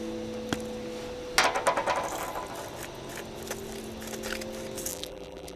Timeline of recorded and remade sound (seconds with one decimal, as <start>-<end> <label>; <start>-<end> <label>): 0.0-4.9 recorded; 4.9-5.6 remade